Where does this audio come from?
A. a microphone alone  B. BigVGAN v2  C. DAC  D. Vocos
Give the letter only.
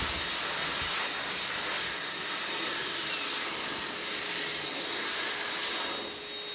A